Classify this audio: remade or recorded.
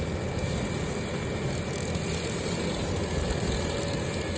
recorded